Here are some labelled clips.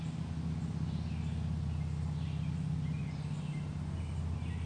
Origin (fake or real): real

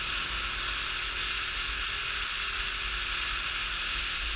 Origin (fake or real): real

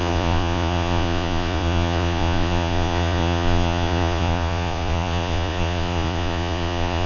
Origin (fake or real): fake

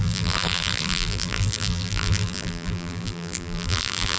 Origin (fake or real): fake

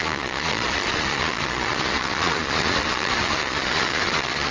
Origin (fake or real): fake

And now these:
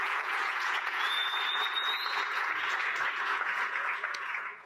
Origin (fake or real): fake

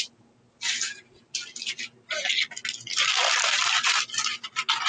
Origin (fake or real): real